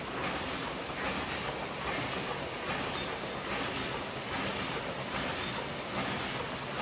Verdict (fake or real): real